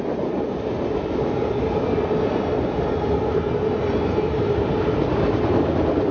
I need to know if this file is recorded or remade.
recorded